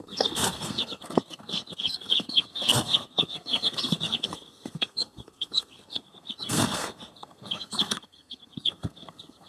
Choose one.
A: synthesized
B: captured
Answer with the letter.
A